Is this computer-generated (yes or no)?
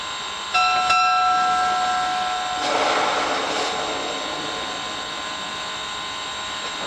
no